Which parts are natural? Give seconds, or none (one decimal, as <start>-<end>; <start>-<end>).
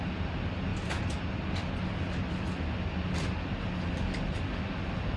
0.0-5.2